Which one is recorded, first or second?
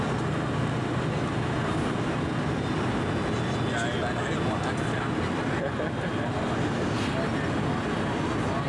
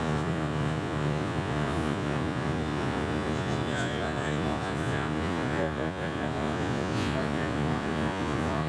first